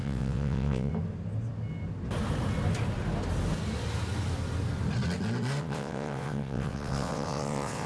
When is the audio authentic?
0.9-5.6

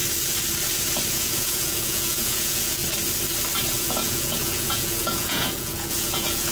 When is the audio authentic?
0.0-1.1; 2.8-3.7

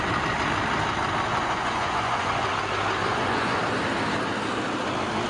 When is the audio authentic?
0.0-1.3; 2.5-3.1; 3.6-5.3